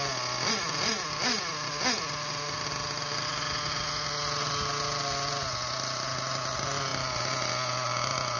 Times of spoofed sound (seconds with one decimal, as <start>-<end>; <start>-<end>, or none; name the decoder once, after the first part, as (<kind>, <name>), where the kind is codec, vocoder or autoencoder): none